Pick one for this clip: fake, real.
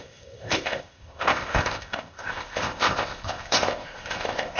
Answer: fake